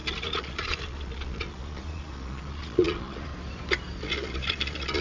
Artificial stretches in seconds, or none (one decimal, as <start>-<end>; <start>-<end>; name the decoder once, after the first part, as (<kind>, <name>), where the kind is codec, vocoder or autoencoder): 0.0-3.3 (vocoder, Vocos); 4.0-5.0